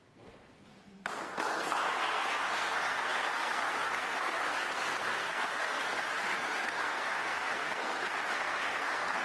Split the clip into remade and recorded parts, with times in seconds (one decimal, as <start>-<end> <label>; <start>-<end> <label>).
0.0-9.2 remade